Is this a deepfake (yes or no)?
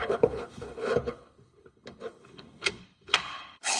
yes